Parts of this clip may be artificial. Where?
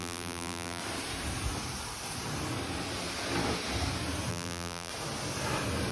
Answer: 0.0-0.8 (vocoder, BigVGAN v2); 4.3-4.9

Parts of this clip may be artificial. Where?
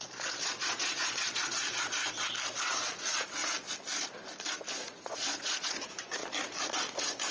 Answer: 0.0-2.0 (vocoder, Vocos); 2.6-3.4; 4.7-6.2; 6.7-7.3